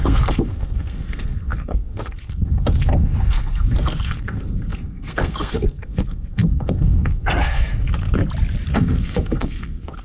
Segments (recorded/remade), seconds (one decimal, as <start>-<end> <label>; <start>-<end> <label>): 0.0-8.2 remade; 8.2-8.7 recorded; 8.7-10.0 remade